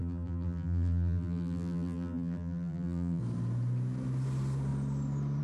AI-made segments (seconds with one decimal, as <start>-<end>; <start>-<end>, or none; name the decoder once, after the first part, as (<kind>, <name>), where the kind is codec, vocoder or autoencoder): 0.0-3.2 (vocoder, BigVGAN v2)